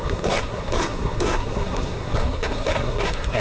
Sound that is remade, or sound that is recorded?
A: remade